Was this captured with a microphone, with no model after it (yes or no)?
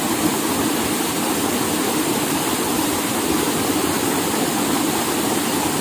yes